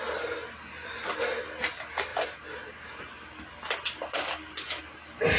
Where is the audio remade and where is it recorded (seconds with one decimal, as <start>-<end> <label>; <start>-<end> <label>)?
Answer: 0.0-5.4 recorded